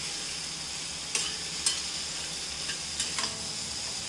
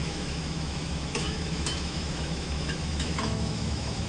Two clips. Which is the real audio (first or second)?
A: first